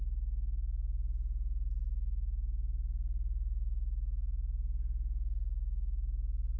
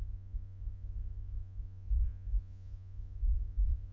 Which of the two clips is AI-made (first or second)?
second